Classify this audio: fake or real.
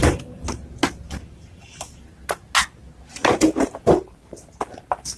real